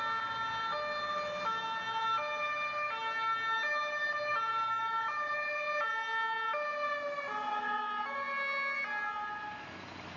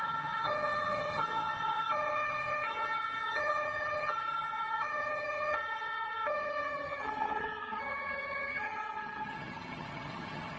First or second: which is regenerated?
second